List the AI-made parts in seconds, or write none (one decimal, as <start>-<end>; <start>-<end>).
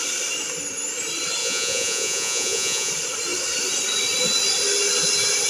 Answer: 1.4-2.9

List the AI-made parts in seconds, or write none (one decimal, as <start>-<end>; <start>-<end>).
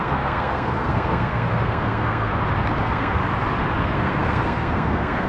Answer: 0.0-2.3; 2.8-3.2; 3.8-5.3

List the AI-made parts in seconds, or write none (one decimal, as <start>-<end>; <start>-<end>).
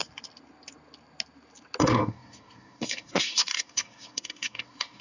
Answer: 1.8-5.0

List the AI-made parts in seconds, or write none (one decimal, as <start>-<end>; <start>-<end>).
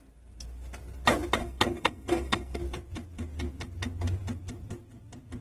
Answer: 1.4-2.6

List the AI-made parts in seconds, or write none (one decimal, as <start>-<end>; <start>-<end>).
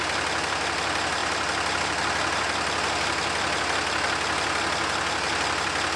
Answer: none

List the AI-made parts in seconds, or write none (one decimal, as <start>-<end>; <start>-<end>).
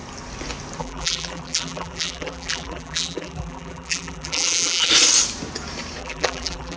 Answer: 0.8-4.9; 6.0-6.8